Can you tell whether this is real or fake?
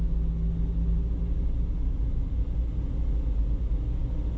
real